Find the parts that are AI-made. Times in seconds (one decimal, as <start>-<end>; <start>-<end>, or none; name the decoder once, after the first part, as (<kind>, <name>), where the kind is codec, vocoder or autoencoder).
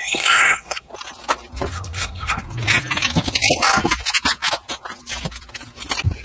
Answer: 0.0-0.9 (codec, SNAC); 1.7-2.4